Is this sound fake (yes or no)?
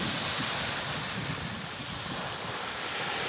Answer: no